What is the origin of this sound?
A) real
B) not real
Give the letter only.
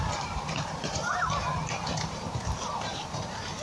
B